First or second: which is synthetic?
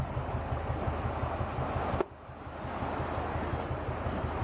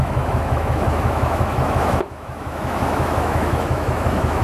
second